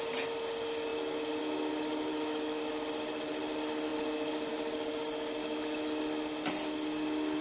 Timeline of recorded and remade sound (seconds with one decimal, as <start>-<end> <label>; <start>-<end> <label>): 0.0-2.1 recorded; 2.1-2.6 remade; 2.6-5.4 recorded; 5.4-6.0 remade; 6.0-7.4 recorded